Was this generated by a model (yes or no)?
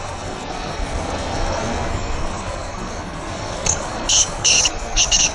yes